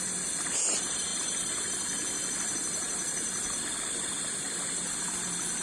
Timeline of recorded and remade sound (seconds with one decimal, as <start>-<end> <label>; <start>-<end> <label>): 0.0-5.6 recorded